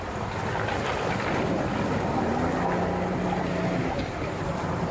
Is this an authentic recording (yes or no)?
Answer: yes